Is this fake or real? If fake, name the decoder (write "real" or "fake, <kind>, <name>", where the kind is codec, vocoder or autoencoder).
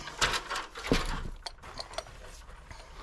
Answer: real